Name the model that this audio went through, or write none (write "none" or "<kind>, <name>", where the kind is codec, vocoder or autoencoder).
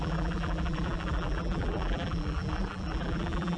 vocoder, BigVGAN v2